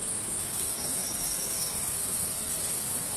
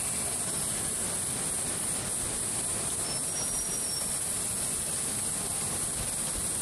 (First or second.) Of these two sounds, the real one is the second